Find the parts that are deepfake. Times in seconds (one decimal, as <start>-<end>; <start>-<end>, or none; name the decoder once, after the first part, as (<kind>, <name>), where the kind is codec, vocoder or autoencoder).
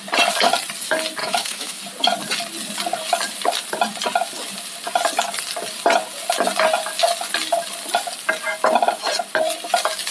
1.2-1.8 (autoencoder, DAC-VAE)